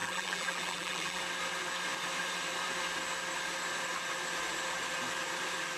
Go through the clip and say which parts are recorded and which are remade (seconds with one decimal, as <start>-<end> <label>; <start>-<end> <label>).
0.0-1.2 remade; 1.2-5.8 recorded